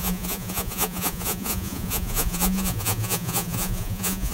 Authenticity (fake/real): fake